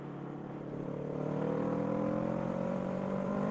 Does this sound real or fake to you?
fake